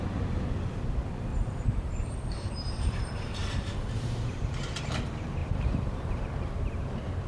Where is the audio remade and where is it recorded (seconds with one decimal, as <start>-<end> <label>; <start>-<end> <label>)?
0.0-1.3 recorded; 1.3-4.6 remade; 4.6-5.4 recorded; 5.4-6.2 remade; 6.2-7.3 recorded